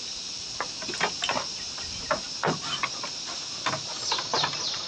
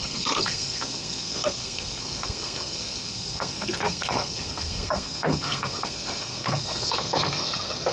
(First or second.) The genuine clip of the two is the first